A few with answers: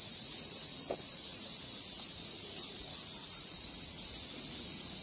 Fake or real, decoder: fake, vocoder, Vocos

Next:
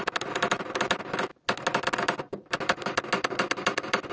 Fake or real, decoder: real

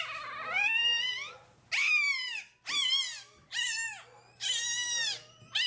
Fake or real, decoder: real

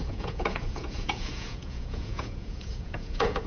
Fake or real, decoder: fake, vocoder, Vocos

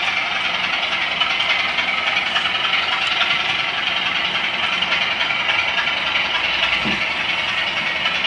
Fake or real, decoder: real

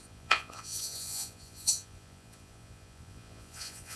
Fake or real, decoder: fake, vocoder, Vocos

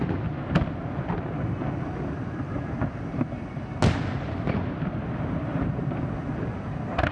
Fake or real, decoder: real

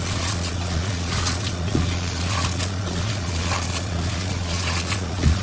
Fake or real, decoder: fake, vocoder, Vocos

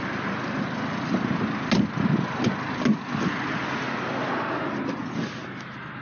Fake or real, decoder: real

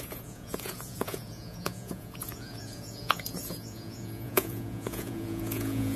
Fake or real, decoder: fake, vocoder, Vocos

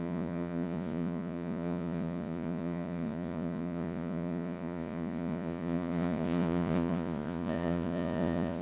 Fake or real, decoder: fake, vocoder, Vocos